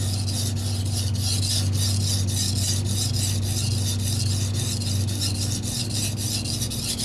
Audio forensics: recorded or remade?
recorded